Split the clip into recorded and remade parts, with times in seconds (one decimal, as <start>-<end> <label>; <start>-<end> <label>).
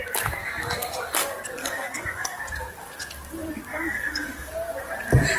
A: 0.0-1.6 recorded; 1.6-2.4 remade; 2.4-3.7 recorded; 3.7-4.5 remade; 4.5-5.4 recorded